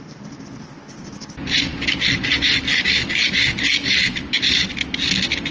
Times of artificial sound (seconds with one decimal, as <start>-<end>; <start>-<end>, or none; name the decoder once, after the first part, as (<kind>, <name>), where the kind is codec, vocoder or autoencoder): none